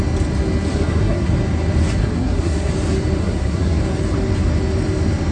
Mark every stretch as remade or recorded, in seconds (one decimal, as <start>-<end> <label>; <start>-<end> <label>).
0.0-0.7 recorded; 0.7-1.3 remade; 1.3-2.0 recorded; 2.0-2.7 remade; 2.7-3.2 recorded; 3.2-3.8 remade; 3.8-5.3 recorded